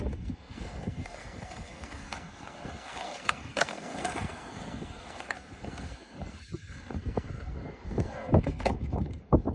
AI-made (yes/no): yes